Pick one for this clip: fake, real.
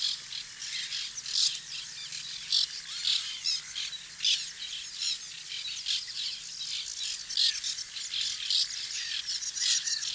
real